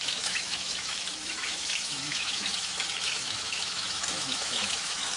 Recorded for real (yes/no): no